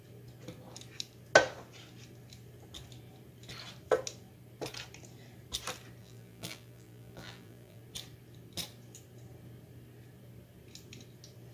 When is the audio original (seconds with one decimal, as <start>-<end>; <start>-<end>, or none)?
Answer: 0.0-6.0; 7.8-11.5